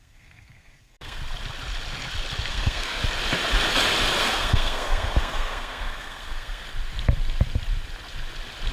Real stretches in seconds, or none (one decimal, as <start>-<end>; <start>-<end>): 1.2-2.5; 3.0-4.2; 6.6-8.7